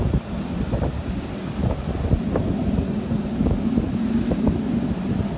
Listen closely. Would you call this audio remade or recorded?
recorded